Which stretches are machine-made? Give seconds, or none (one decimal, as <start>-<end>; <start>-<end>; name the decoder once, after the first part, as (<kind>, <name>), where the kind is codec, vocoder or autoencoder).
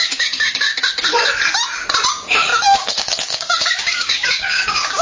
0.0-0.7 (codec, DAC); 2.1-5.0